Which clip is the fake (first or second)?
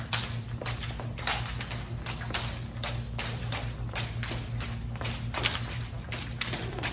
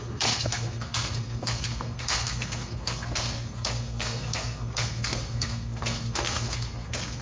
second